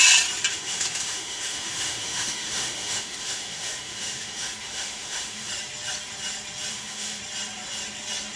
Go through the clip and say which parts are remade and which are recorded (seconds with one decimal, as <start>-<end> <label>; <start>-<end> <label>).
0.0-0.5 recorded; 0.5-5.5 remade; 5.5-6.7 recorded; 6.7-7.2 remade; 7.2-8.4 recorded